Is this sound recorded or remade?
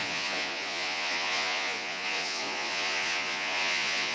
remade